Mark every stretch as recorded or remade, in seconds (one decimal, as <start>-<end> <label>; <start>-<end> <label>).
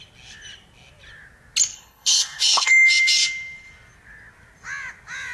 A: 0.0-1.7 recorded; 1.7-2.7 remade; 2.7-5.3 recorded